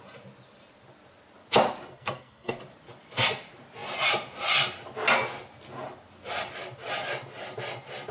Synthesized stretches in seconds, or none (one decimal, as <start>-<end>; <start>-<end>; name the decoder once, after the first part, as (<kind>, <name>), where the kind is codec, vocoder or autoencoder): 1.9-2.6 (codec, SNAC)